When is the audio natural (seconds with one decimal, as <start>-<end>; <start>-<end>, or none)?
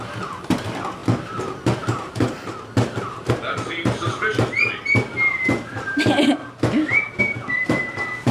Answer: 0.0-8.3